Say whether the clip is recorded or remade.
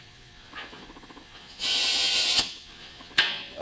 remade